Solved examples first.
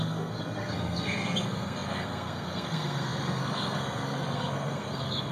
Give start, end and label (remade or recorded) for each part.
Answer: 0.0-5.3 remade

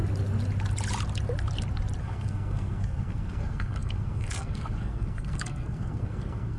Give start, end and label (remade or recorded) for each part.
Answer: 0.0-2.0 recorded; 2.0-6.6 remade

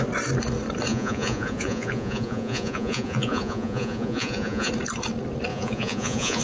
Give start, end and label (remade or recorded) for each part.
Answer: 0.0-0.9 recorded; 0.9-4.7 remade; 4.7-5.5 recorded; 5.5-6.4 remade

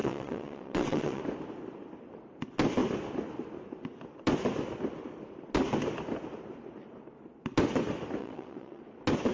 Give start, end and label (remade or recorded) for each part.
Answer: 0.0-1.2 remade; 1.2-8.2 recorded; 8.2-8.8 remade; 8.8-9.3 recorded